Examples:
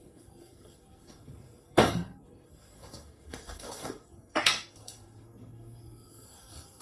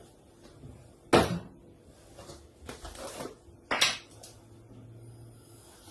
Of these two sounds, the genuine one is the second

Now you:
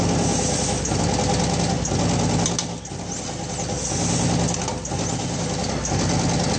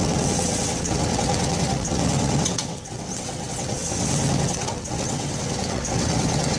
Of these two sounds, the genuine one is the first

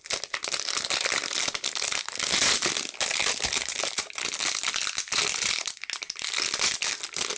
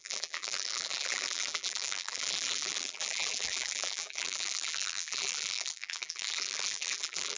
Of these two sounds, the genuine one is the first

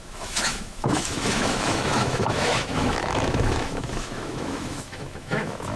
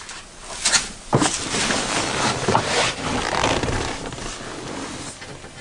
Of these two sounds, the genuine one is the second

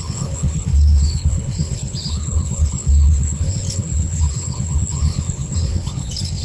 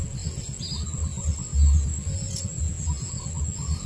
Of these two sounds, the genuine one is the second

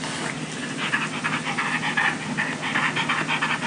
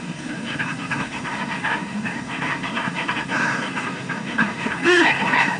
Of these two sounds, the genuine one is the first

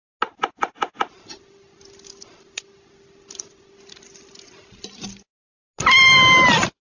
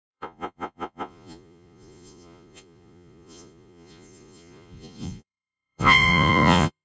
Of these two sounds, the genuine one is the first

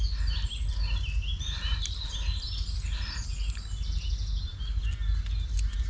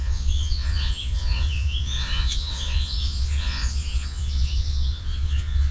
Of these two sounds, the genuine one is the first